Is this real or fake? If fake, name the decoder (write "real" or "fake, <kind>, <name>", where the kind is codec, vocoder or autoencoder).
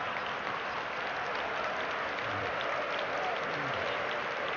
fake, vocoder, BigVGAN v2